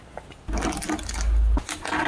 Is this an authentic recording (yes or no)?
yes